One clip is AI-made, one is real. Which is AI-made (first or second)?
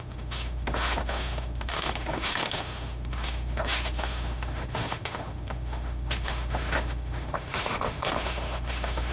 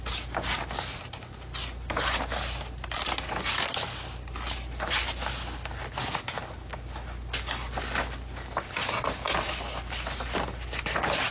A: first